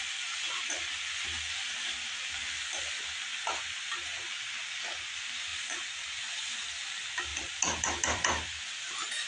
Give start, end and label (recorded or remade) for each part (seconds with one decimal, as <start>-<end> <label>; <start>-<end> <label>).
0.0-2.4 recorded; 2.4-3.0 remade; 3.0-7.3 recorded; 7.3-9.3 remade